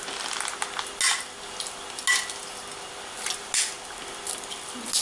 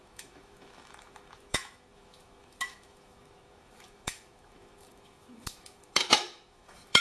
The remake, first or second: second